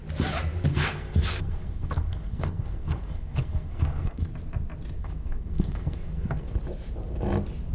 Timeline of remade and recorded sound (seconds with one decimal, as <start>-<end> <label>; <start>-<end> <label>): 0.0-0.7 recorded; 0.7-4.3 remade; 4.3-5.0 recorded; 5.0-6.5 remade; 6.5-7.7 recorded